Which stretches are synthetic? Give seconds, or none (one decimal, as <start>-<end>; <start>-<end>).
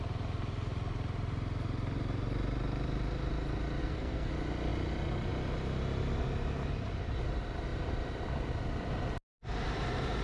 3.8-4.3